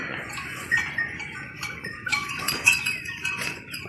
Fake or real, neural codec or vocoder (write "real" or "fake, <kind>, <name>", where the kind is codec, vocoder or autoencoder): fake, vocoder, Vocos